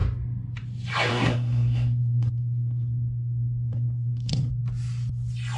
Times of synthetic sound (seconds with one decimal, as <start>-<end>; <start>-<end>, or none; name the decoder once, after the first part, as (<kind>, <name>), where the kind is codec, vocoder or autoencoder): 1.1-4.5 (codec, SNAC)